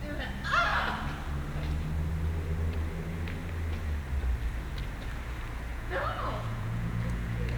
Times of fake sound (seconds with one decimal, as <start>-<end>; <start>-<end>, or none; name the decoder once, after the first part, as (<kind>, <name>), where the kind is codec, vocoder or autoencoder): 5.7-7.6 (vocoder, Vocos)